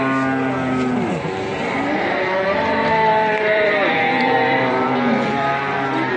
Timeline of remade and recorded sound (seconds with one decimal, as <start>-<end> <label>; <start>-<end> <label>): 0.0-1.5 recorded; 1.5-5.2 remade; 5.2-6.2 recorded

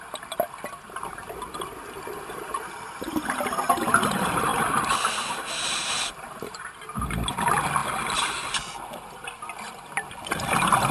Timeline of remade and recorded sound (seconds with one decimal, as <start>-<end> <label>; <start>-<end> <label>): 0.0-4.5 recorded; 4.5-6.6 remade; 6.6-10.9 recorded

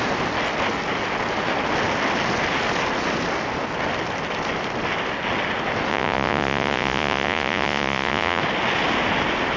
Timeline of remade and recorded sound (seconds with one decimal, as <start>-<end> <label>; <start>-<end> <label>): 0.0-5.9 recorded; 5.9-8.4 remade; 8.4-9.6 recorded